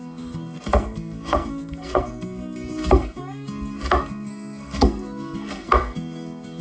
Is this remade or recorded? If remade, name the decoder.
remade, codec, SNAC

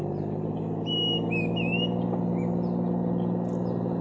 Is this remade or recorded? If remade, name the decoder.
recorded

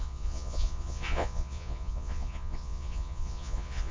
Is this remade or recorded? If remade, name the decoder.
remade, vocoder, Vocos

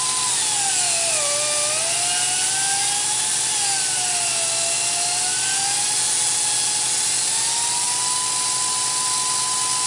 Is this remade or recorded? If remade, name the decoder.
recorded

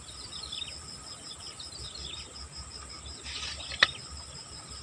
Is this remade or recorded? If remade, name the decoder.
recorded